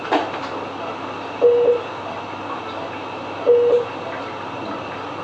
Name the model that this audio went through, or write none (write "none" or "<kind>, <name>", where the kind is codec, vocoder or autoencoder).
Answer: none